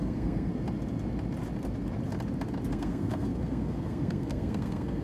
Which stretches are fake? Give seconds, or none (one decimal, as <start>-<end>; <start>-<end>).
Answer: 0.0-0.5; 2.7-5.0